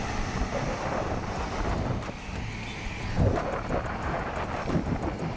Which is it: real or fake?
real